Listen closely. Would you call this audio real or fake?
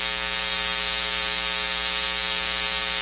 real